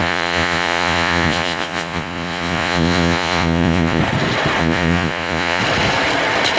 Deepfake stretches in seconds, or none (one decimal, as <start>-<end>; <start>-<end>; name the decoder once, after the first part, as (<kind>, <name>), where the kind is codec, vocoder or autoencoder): 0.0-4.0 (vocoder, Vocos); 4.6-5.6